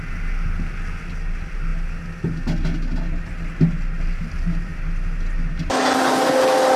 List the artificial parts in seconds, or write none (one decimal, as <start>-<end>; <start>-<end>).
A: none